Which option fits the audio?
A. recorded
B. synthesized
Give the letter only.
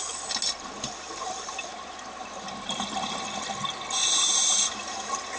A